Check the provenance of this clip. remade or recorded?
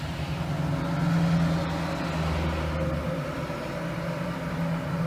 recorded